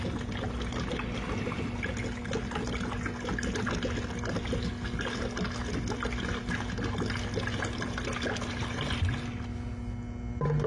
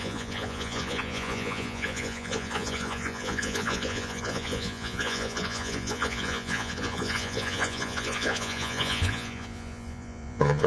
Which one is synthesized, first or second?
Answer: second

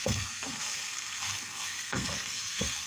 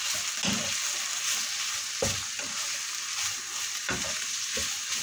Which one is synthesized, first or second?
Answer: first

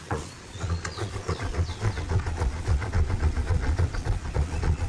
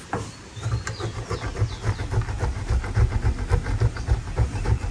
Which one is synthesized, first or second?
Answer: first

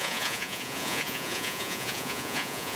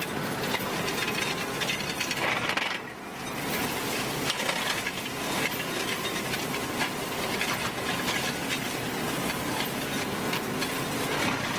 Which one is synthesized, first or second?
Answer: first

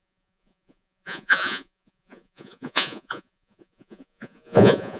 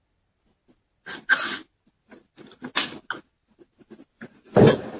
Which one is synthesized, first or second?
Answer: first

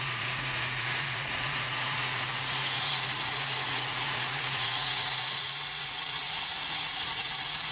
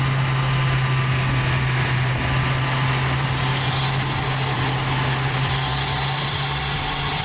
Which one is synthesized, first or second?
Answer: first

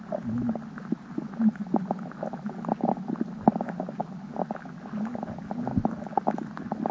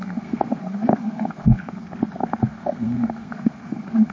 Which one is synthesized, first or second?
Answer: second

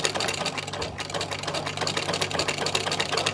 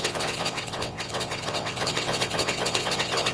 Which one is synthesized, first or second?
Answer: second